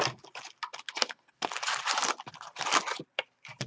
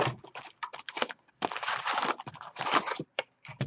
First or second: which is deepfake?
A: second